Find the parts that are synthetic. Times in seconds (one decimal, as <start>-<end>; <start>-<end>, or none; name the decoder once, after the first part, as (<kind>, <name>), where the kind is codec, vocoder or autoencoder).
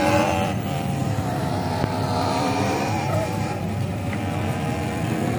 1.0-4.2 (vocoder, BigVGAN v2)